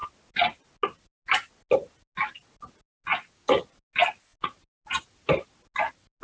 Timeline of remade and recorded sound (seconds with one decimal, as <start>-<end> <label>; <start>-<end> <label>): 0.0-6.2 recorded